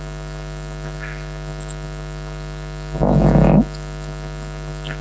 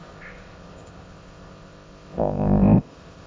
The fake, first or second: second